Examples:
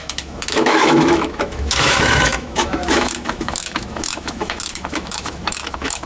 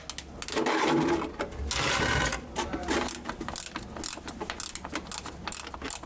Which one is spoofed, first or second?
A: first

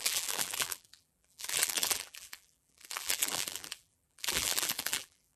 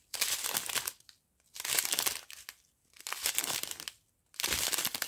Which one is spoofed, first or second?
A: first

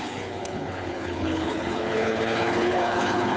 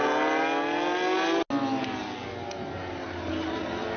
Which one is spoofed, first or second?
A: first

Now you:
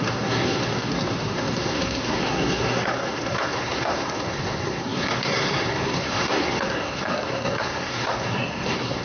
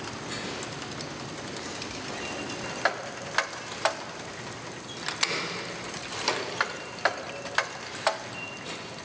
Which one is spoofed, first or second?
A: first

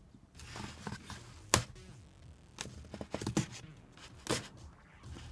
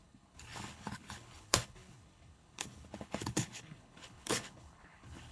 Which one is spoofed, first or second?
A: second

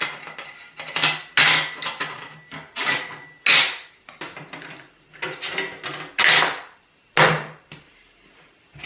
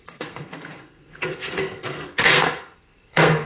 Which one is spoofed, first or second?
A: second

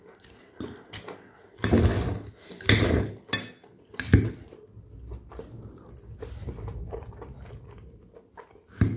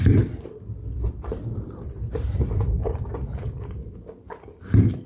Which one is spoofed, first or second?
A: second